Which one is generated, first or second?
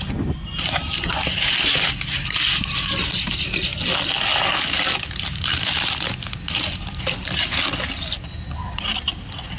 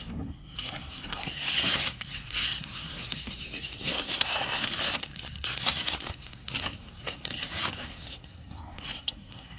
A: second